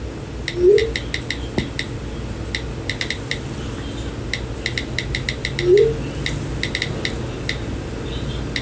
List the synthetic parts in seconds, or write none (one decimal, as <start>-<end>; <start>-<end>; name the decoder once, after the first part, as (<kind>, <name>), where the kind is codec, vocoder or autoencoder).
none